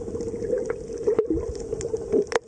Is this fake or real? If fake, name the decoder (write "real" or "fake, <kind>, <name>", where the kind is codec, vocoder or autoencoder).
real